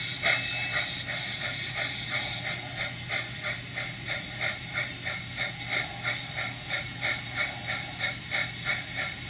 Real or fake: real